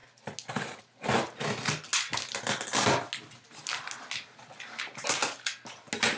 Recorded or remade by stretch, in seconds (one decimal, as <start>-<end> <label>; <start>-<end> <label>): 0.0-6.2 recorded